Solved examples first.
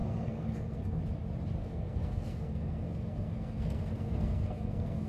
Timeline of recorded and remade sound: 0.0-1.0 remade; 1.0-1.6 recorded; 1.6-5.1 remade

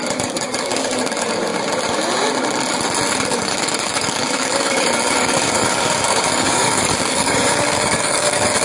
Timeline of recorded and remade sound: 0.0-1.5 remade; 1.5-3.1 recorded; 3.1-8.6 remade